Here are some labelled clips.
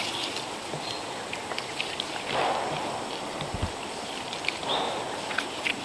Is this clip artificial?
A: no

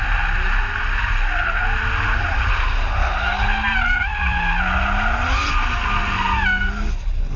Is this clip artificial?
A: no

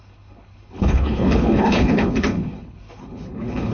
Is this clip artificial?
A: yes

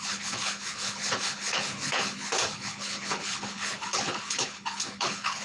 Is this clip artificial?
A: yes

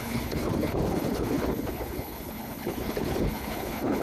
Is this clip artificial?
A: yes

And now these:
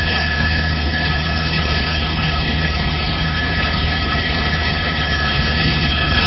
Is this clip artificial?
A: yes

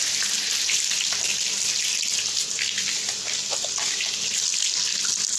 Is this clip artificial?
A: no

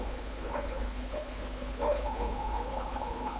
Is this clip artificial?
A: yes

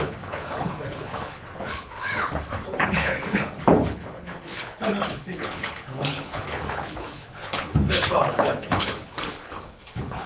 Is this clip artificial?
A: yes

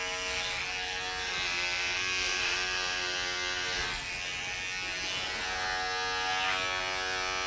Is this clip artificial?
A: no